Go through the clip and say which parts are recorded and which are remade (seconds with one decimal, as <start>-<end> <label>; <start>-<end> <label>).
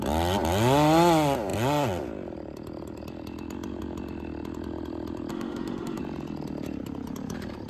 0.0-5.3 recorded; 5.3-6.0 remade; 6.0-7.7 recorded